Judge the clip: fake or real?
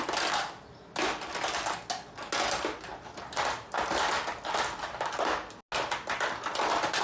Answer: real